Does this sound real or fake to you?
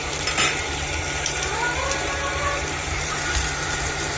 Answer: fake